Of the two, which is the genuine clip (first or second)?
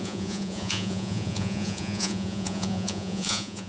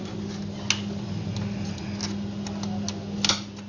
second